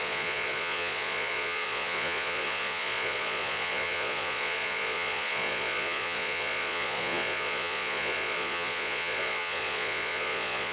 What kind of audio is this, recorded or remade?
remade